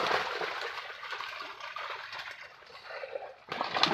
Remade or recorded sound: recorded